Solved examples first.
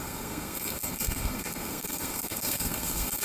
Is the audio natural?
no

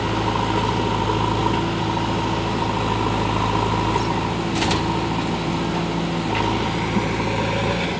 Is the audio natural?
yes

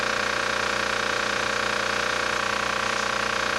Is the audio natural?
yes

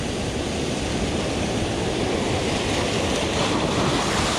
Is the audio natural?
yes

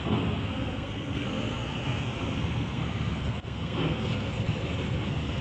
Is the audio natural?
no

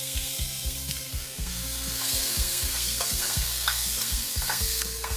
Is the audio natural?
no